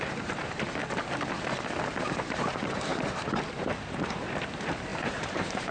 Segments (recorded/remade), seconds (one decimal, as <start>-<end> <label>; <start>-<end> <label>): 0.0-0.8 remade; 0.8-1.8 recorded; 1.8-2.9 remade; 2.9-3.5 recorded; 3.5-5.7 remade